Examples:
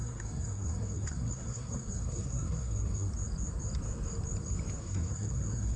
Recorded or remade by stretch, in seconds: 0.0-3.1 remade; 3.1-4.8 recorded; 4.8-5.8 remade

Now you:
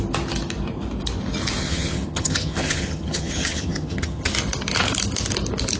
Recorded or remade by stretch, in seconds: 0.0-1.6 recorded; 1.6-4.3 remade; 4.3-5.8 recorded

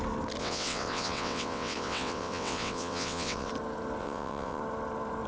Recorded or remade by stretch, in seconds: 0.0-0.4 recorded; 0.4-3.5 remade; 3.5-4.0 recorded; 4.0-4.6 remade; 4.6-5.3 recorded

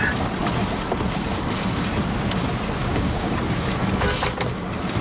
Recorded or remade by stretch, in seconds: 0.0-2.8 recorded; 2.8-3.3 remade; 3.3-5.0 recorded

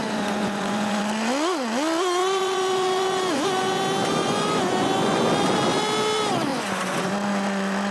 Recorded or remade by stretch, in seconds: 0.0-1.0 remade; 1.0-2.2 recorded; 2.2-3.8 remade; 3.8-4.2 recorded; 4.2-5.3 remade; 5.3-6.5 recorded; 6.5-7.1 remade; 7.1-7.9 recorded

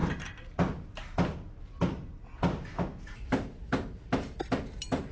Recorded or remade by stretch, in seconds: 0.0-5.1 recorded